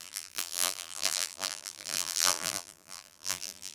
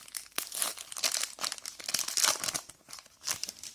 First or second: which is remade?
first